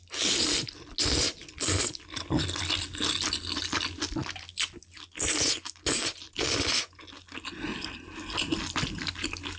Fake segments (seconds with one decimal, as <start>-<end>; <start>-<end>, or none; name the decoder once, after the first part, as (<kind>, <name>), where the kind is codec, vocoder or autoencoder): none